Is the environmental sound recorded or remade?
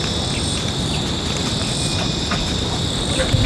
recorded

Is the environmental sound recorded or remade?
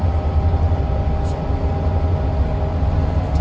recorded